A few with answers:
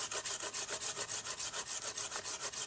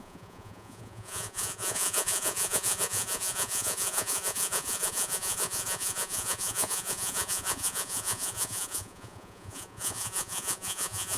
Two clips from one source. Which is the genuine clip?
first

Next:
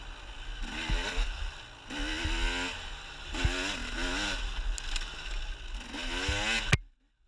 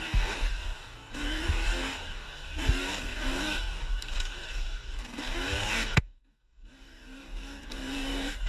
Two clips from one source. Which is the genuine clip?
first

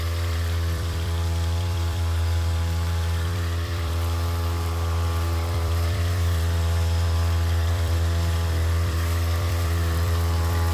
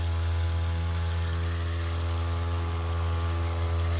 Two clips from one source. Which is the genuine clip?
second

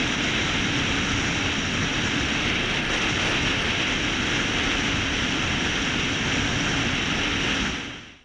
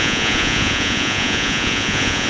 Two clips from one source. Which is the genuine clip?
first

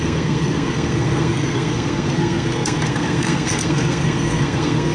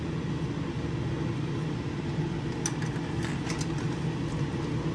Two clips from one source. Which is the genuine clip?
second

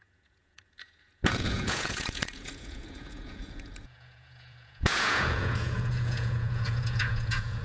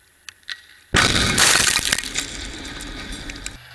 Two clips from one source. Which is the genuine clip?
second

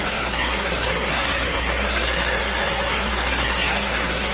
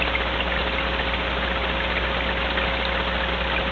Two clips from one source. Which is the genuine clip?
second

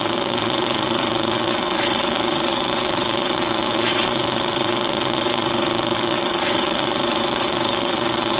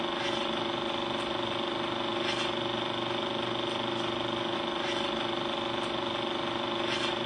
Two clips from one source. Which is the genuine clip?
second